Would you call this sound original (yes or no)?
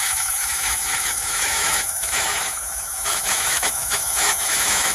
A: no